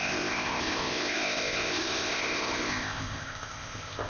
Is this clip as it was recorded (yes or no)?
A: no